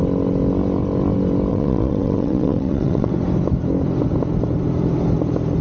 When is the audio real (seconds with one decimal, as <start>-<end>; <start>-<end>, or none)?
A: 0.0-1.5; 3.1-5.6